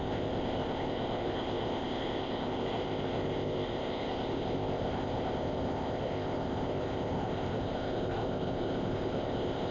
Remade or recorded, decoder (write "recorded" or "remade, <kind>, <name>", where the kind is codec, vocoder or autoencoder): remade, codec, ZipCodec